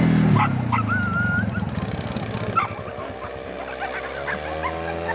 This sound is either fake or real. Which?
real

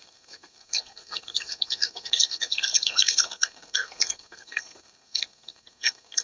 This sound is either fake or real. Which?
fake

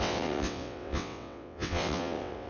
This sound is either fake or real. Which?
fake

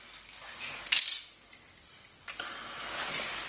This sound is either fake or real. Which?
real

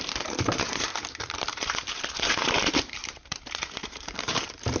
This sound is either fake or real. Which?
fake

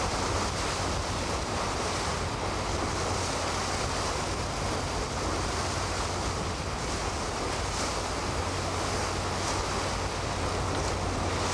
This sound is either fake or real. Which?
real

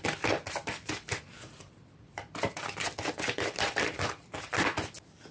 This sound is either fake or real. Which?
fake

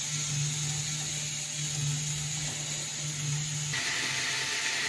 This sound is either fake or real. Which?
real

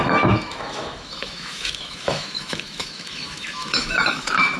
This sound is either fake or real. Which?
fake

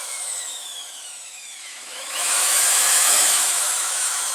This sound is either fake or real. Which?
fake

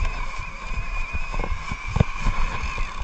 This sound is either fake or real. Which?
real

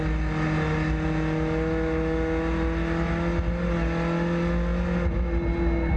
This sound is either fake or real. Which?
real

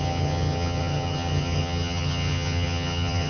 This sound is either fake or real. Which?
fake